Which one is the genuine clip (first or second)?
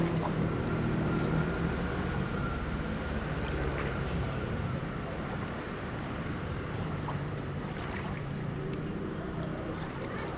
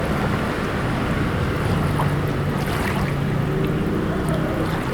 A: second